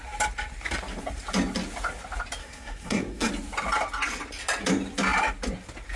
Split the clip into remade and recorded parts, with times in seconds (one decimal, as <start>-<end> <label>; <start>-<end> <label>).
0.0-2.4 recorded; 2.4-3.3 remade; 3.3-6.0 recorded